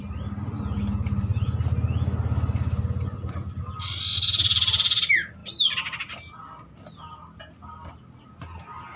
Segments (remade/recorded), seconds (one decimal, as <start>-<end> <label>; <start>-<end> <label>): 0.0-9.0 recorded